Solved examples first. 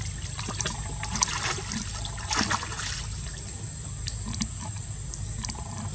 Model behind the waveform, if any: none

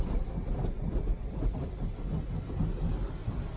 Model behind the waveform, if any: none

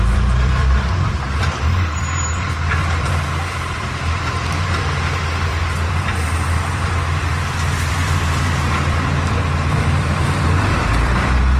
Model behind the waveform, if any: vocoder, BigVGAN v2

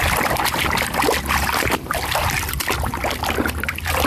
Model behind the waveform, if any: none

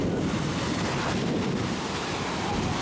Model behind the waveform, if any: none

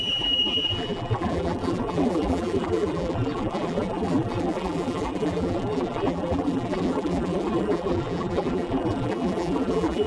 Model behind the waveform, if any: vocoder, BigVGAN v2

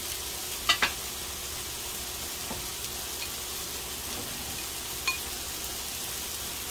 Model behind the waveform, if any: none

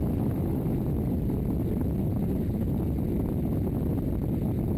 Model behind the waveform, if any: none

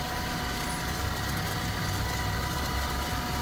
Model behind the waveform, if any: none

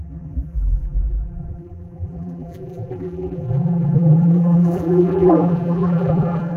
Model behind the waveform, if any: vocoder, BigVGAN v2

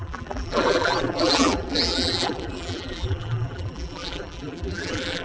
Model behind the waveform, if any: vocoder, BigVGAN v2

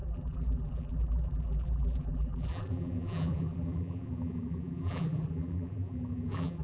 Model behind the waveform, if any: vocoder, BigVGAN v2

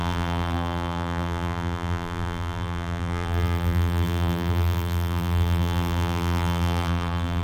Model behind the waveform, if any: vocoder, BigVGAN v2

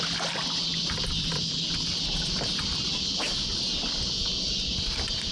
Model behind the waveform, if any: none